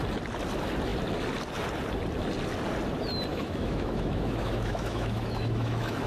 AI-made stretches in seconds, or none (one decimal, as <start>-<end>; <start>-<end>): 3.3-6.1